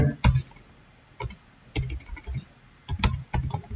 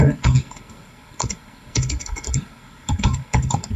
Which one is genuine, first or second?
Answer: first